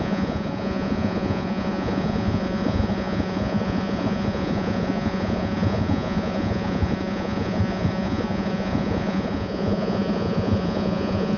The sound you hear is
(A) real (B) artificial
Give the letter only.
B